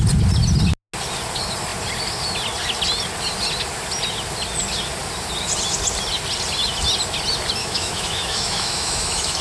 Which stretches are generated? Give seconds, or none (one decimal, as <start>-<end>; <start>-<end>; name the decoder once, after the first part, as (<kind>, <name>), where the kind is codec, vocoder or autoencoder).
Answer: 7.6-9.4 (autoencoder, DAC-VAE)